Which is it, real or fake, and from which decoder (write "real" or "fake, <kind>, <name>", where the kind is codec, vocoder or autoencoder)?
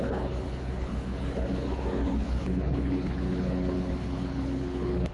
fake, codec, HILCodec